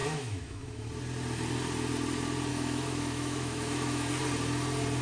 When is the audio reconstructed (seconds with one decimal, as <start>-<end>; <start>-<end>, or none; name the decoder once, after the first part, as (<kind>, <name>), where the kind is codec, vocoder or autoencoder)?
0.0-0.9 (autoencoder, DAC-VAE); 2.5-4.1

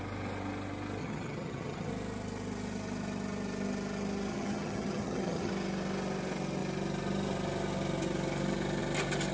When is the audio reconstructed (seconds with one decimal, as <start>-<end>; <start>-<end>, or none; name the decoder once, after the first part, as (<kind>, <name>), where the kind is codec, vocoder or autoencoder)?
1.0-1.9 (vocoder, HiFi-GAN); 4.3-5.5

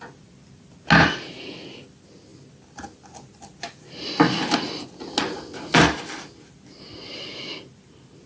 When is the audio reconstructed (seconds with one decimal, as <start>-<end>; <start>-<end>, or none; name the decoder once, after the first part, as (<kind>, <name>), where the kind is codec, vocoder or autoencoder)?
none